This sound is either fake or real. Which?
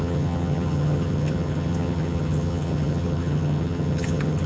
fake